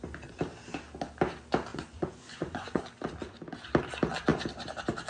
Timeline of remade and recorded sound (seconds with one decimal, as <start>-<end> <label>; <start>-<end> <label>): 0.0-1.7 recorded; 1.7-2.8 remade; 2.8-5.1 recorded